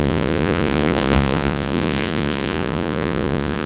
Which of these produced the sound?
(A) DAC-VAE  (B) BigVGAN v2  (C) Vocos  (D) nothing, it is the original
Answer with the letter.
C